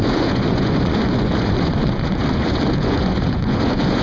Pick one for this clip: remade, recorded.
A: remade